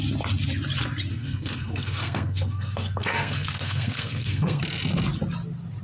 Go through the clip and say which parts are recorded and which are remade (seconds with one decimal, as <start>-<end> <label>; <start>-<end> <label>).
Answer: 0.0-1.1 recorded; 1.1-4.6 remade; 4.6-5.8 recorded